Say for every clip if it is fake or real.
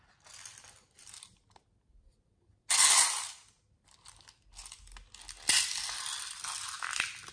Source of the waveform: real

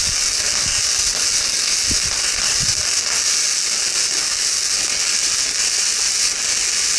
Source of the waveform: real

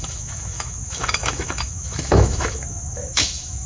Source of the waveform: fake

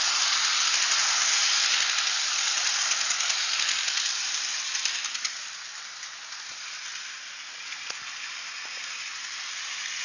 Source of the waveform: real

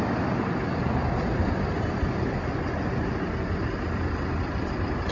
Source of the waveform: real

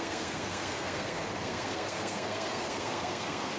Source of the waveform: fake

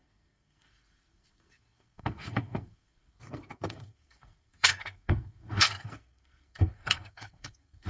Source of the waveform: fake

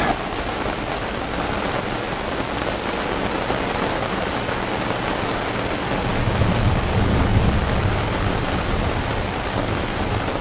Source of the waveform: real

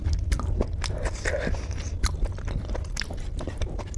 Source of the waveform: real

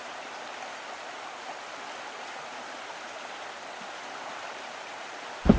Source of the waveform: real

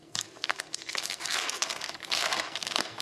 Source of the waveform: fake